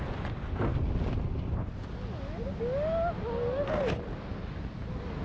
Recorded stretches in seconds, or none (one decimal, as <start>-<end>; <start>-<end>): 0.0-5.2